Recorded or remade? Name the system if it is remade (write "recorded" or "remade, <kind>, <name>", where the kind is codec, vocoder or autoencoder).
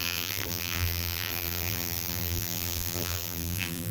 remade, vocoder, BigVGAN v2